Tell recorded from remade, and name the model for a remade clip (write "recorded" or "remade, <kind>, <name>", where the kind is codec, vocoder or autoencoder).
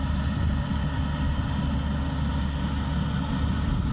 recorded